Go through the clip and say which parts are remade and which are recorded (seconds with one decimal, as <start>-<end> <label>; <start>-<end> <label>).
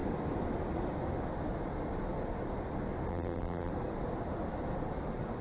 0.0-3.1 recorded; 3.1-3.7 remade; 3.7-5.4 recorded